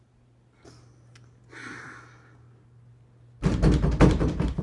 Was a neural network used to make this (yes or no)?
no